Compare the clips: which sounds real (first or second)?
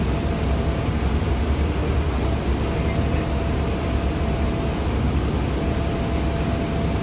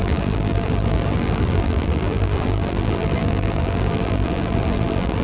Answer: first